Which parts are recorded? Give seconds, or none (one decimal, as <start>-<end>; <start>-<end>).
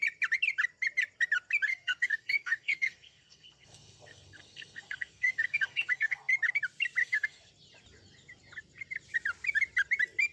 0.0-1.7; 6.3-7.0; 7.5-10.3